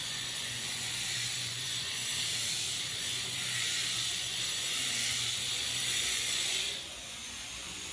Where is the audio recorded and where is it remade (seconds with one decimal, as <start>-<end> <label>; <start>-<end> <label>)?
0.0-2.1 remade; 2.1-2.8 recorded; 2.8-7.9 remade